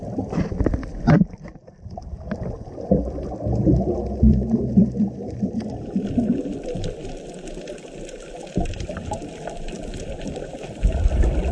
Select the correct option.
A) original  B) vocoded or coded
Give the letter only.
B